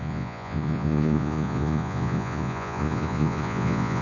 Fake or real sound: fake